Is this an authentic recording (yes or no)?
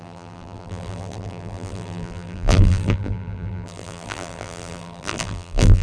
no